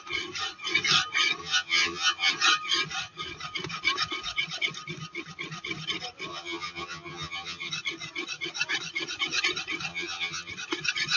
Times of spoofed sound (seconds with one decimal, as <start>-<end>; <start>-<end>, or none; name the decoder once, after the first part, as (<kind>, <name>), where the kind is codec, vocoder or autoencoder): 1.4-2.3 (vocoder, HiFi-GAN); 6.3-7.7; 9.9-10.5